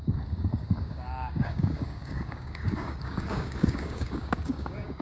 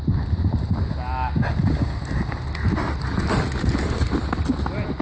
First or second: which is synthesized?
first